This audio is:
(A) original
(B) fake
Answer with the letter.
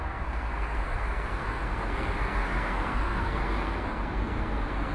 B